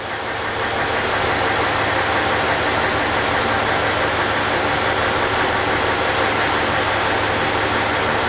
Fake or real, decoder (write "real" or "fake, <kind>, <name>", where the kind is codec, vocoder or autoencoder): real